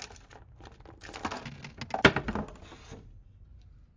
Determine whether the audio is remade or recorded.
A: recorded